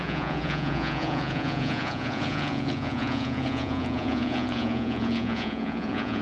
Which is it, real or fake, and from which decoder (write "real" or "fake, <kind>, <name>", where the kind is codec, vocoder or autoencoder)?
fake, vocoder, Vocos